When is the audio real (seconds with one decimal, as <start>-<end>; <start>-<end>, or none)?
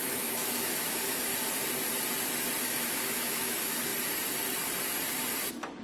1.3-2.6; 3.9-5.8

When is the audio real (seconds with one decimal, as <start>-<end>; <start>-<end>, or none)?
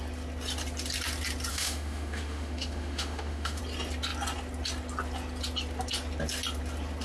0.0-1.5; 3.6-7.0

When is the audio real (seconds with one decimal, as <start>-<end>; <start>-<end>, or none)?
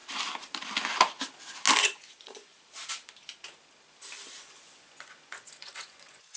0.0-1.8; 2.5-4.4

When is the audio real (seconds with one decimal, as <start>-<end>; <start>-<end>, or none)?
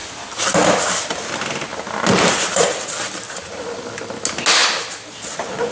1.2-1.7; 3.8-4.6; 5.1-5.7